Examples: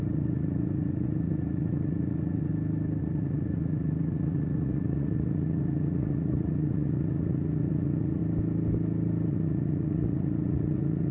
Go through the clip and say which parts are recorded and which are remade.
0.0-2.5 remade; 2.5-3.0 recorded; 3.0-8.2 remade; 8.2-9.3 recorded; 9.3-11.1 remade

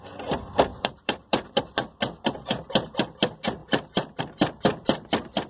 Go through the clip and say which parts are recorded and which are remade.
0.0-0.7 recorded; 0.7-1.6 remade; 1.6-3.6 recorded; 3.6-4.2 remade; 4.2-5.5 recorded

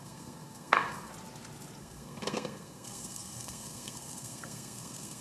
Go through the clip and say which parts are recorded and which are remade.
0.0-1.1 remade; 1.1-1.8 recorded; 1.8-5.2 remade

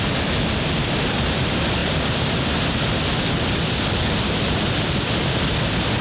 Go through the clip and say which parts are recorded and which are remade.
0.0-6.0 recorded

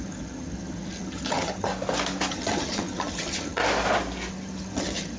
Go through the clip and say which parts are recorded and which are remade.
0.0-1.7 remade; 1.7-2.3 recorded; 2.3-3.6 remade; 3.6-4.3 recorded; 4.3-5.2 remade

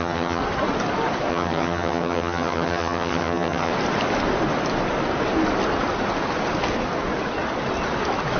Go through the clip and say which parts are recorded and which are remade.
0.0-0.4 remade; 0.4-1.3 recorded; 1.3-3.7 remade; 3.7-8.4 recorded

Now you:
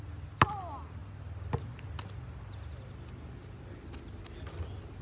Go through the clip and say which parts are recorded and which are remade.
0.0-5.0 recorded